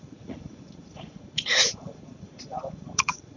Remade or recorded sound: remade